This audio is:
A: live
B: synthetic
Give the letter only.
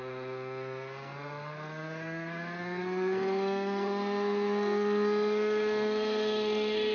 B